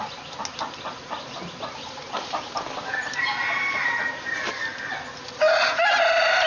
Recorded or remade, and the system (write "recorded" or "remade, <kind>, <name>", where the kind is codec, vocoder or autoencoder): recorded